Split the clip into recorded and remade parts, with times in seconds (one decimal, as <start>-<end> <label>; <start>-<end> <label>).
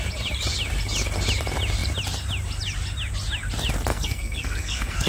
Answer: 0.0-3.9 recorded; 3.9-5.1 remade